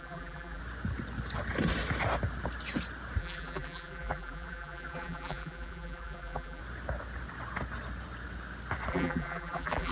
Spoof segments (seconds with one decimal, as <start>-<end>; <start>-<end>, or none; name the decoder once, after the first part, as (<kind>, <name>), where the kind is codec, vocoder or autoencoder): 0.0-0.6 (vocoder, BigVGAN v2); 3.2-6.6; 8.9-9.9